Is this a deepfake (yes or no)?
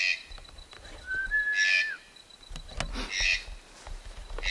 no